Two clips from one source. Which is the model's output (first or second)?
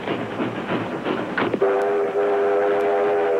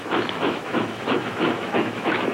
second